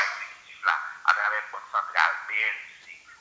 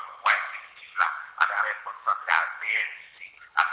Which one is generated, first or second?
second